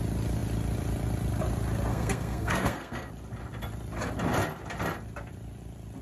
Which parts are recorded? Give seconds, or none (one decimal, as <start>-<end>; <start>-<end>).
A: 0.0-1.9; 3.1-6.0